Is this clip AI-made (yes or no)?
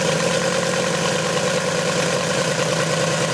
no